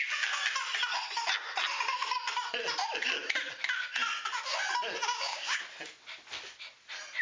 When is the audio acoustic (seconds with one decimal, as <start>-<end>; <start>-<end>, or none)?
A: 0.0-5.1; 5.6-7.2